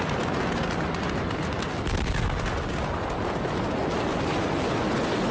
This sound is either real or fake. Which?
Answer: real